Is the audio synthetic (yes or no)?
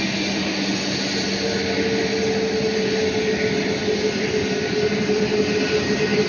no